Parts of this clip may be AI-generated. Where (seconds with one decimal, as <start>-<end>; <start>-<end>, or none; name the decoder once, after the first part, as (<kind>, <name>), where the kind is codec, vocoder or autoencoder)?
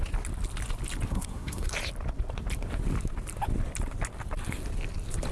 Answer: 1.1-1.7 (codec, SNAC)